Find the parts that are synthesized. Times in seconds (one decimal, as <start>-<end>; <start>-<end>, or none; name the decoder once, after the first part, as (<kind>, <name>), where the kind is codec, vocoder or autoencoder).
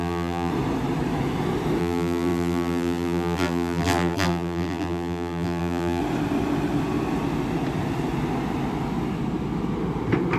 0.0-0.5 (vocoder, BigVGAN v2); 1.8-6.0